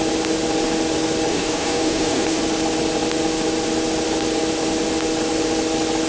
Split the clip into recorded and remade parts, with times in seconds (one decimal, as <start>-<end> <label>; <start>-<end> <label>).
0.0-1.3 recorded; 1.3-2.4 remade; 2.4-6.1 recorded